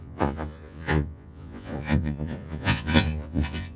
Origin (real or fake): fake